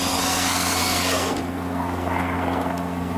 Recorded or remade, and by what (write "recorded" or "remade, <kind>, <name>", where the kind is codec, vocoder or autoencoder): remade, codec, SNAC